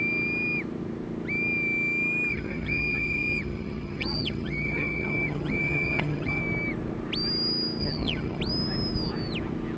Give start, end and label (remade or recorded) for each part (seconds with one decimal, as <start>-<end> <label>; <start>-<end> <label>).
0.0-2.3 recorded; 2.3-6.4 remade; 6.4-7.8 recorded; 7.8-8.4 remade; 8.4-9.8 recorded